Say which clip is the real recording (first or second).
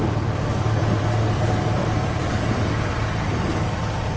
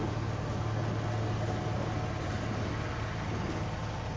second